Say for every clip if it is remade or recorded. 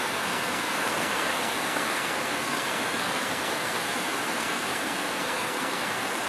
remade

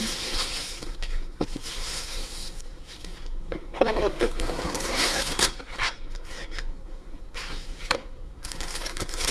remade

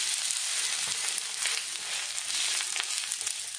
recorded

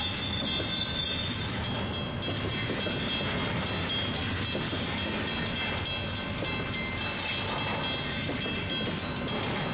recorded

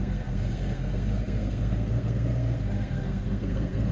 remade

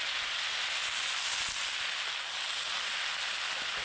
recorded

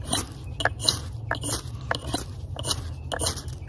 recorded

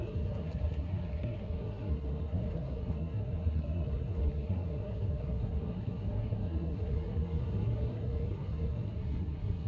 remade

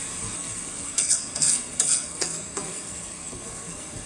remade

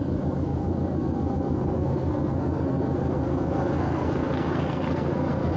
remade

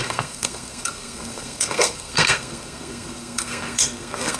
remade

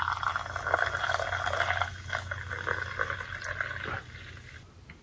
recorded